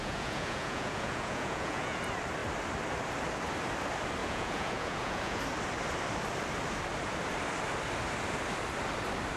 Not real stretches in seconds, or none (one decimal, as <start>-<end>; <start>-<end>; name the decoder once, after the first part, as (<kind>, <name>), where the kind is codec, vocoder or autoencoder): 0.0-2.0 (vocoder, Vocos); 4.2-5.4